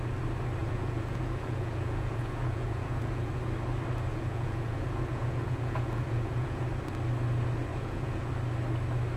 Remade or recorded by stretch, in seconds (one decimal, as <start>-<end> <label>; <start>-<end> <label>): 0.0-0.6 recorded; 0.6-3.3 remade; 3.3-4.1 recorded; 4.1-6.6 remade; 6.6-7.7 recorded; 7.7-8.3 remade; 8.3-9.2 recorded